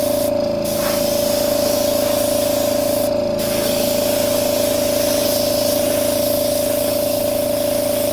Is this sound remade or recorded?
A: recorded